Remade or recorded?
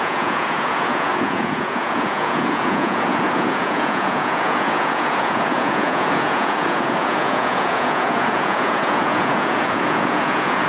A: remade